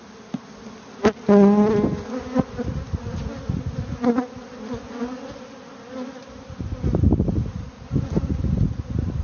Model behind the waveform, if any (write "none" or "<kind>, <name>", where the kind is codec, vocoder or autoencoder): none